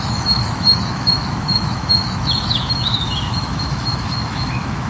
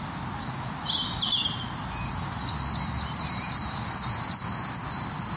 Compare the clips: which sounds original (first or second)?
second